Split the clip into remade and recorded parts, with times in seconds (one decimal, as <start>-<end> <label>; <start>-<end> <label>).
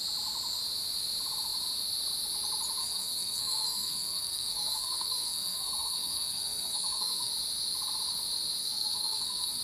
0.0-2.8 recorded; 2.8-7.3 remade; 7.3-8.6 recorded; 8.6-9.6 remade